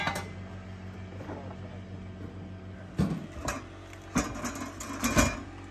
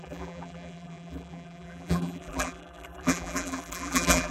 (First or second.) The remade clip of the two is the second